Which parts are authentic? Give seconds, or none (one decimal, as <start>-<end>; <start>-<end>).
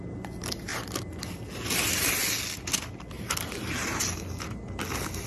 0.0-5.3